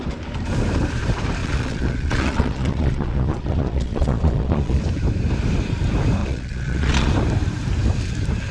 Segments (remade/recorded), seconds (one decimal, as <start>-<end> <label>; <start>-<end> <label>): 0.0-1.4 recorded; 1.4-4.8 remade; 4.8-6.2 recorded; 6.2-7.1 remade; 7.1-8.5 recorded